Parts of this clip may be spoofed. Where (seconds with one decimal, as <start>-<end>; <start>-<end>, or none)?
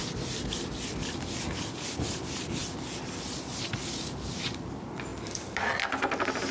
none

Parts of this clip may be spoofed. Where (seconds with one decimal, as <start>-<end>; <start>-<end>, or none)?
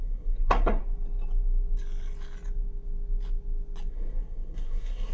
0.0-0.8; 3.9-5.1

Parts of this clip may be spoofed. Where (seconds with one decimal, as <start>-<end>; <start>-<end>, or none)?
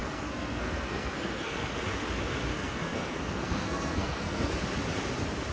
0.0-1.8; 2.5-4.5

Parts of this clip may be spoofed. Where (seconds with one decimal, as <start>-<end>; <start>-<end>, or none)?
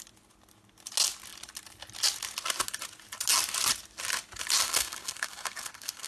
4.6-6.1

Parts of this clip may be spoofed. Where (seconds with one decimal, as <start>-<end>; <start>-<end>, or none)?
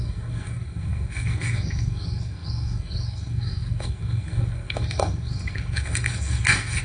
0.0-6.8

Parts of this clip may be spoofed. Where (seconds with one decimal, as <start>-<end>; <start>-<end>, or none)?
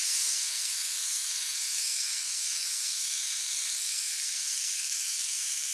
0.0-5.7